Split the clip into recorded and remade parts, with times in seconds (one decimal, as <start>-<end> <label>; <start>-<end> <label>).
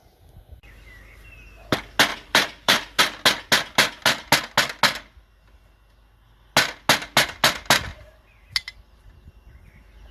0.0-2.1 recorded; 2.1-3.0 remade; 3.0-7.9 recorded; 7.9-9.3 remade; 9.3-10.1 recorded